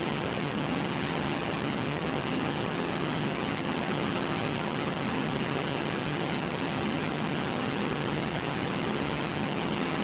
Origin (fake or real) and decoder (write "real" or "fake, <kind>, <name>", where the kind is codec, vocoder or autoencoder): fake, vocoder, HiFi-GAN